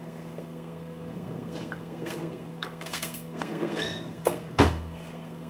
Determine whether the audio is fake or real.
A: fake